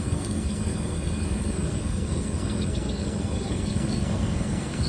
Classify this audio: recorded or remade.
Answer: remade